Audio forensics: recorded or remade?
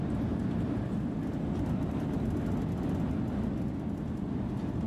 recorded